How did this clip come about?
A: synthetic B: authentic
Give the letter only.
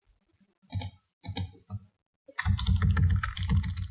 B